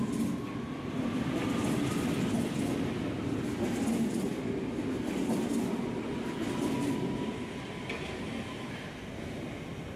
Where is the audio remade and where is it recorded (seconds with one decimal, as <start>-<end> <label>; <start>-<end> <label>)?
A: 0.0-10.0 recorded